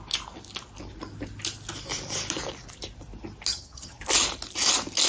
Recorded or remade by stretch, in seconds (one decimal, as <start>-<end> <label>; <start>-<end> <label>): 0.0-3.5 recorded; 3.5-4.0 remade; 4.0-5.1 recorded